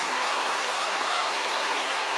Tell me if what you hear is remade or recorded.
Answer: remade